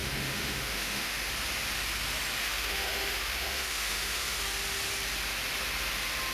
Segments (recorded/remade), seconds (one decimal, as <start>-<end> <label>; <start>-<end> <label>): 0.0-1.3 remade; 1.3-2.4 recorded; 2.4-4.4 remade; 4.4-6.3 recorded